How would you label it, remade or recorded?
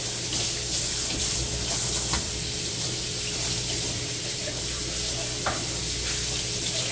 remade